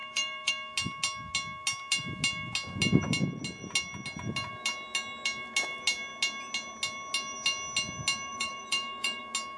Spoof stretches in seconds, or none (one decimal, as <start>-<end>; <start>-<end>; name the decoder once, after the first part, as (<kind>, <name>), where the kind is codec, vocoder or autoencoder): 0.0-0.5 (vocoder, BigVGAN v2); 8.3-9.2